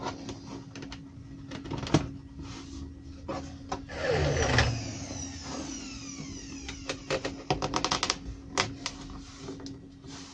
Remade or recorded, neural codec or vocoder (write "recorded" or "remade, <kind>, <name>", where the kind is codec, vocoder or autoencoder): recorded